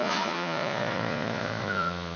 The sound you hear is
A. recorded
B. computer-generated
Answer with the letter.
B